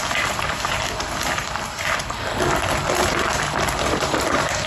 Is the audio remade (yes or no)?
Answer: no